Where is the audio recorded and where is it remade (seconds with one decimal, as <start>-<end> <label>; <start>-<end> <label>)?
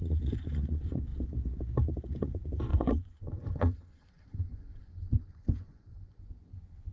0.0-1.1 remade; 1.1-2.2 recorded; 2.2-6.9 remade